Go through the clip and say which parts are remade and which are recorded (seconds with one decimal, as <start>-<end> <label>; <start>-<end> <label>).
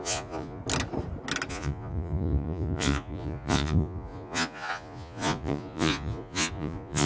0.0-0.6 remade; 0.6-1.5 recorded; 1.5-7.1 remade